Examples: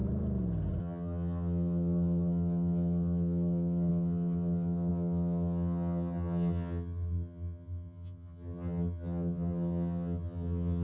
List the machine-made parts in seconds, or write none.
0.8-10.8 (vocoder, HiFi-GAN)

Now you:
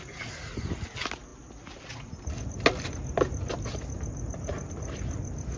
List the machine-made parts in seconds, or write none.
none

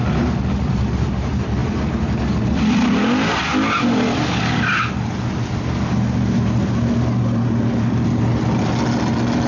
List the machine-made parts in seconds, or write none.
none

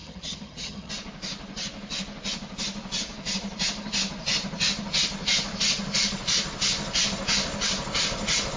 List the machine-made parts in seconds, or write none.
0.0-0.9 (vocoder, HiFi-GAN)

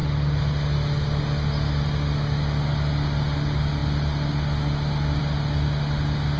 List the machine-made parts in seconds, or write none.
none

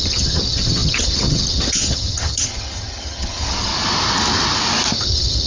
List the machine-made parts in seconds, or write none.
0.0-3.7 (vocoder, HiFi-GAN); 5.0-5.5